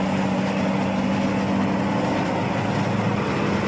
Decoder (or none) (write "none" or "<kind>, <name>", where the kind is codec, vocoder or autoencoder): none